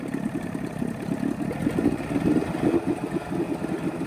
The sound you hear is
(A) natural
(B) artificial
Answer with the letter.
A